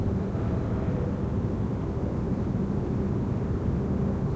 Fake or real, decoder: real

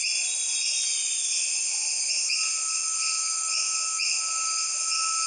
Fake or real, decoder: real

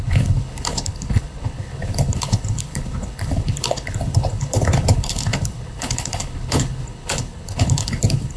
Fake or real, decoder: fake, codec, HILCodec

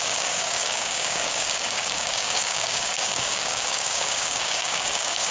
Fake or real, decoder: fake, codec, DAC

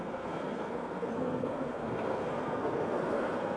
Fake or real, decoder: fake, codec, SNAC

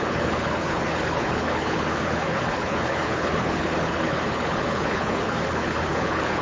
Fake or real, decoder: fake, codec, HILCodec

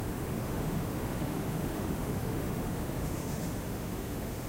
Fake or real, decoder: fake, autoencoder, DAC-VAE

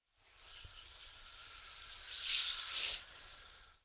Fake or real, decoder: real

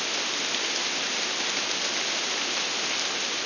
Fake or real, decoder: real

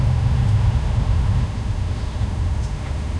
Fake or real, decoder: fake, autoencoder, DAC-VAE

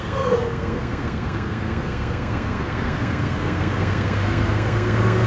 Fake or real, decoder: fake, codec, SNAC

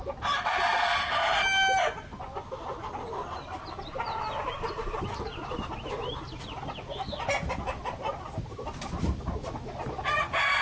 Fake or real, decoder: real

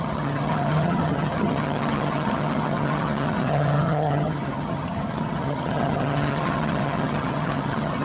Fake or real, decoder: fake, vocoder, HiFi-GAN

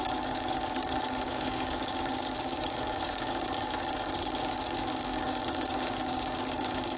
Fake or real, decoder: fake, codec, DAC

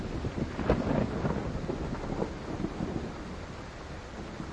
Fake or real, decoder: real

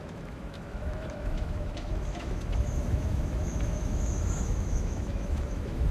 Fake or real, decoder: fake, autoencoder, DAC-VAE